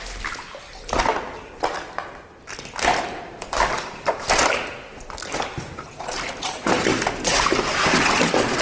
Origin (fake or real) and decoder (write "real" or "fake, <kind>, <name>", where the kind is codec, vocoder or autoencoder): real